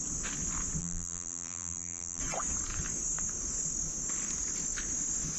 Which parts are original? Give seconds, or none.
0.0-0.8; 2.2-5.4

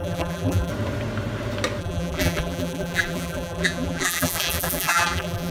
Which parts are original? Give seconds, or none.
0.7-1.8